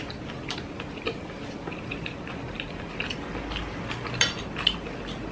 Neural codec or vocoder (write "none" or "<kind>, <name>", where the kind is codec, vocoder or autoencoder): vocoder, BigVGAN v2